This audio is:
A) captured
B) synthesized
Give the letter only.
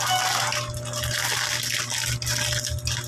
A